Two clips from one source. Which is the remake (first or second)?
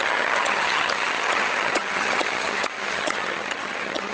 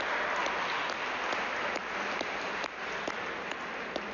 first